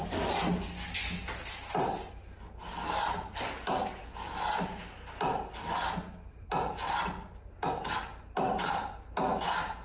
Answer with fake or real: real